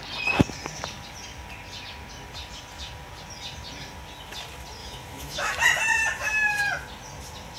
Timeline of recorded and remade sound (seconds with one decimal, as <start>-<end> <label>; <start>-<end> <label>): 0.0-4.8 recorded; 4.8-5.5 remade; 5.5-7.6 recorded